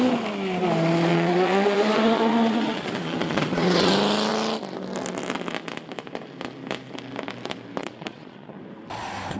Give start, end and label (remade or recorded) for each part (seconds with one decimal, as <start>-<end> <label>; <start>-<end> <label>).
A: 0.0-1.1 recorded; 1.1-3.9 remade; 3.9-7.8 recorded; 7.8-8.6 remade; 8.6-9.4 recorded